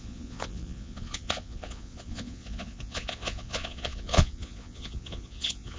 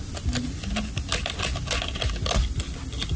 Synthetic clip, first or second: first